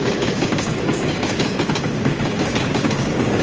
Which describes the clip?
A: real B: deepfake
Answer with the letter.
B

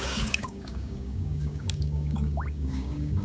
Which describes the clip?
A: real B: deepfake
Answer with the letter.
B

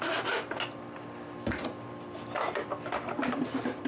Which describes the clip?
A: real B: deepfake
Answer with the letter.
A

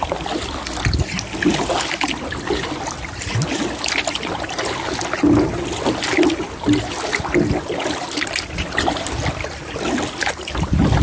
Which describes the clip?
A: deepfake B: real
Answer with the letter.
B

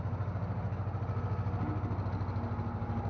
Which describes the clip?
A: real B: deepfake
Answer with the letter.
A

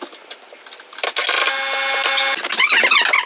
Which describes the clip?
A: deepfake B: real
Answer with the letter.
B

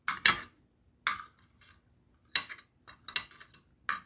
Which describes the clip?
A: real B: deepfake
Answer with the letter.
A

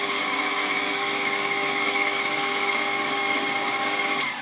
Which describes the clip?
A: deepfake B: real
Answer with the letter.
A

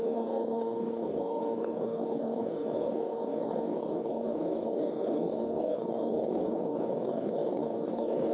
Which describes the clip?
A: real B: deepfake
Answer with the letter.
B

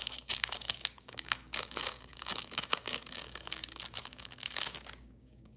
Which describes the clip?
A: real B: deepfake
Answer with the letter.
B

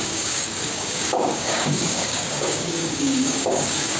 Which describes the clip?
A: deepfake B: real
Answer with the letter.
A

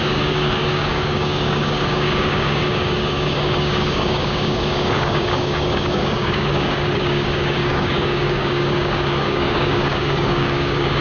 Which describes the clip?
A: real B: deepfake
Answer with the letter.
B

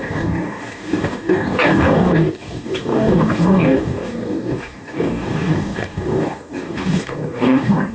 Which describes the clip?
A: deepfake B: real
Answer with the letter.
A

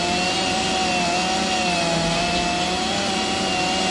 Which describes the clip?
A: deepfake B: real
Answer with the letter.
B